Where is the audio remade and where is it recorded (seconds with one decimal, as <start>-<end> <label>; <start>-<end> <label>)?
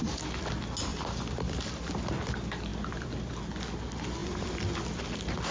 0.0-0.9 recorded; 0.9-2.1 remade; 2.1-2.7 recorded; 2.7-3.4 remade; 3.4-4.2 recorded; 4.2-5.1 remade; 5.1-5.5 recorded